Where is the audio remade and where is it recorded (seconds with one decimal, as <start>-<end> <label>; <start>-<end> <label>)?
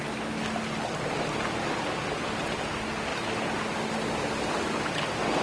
0.0-5.4 recorded